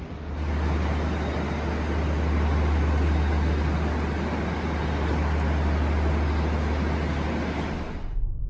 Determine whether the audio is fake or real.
real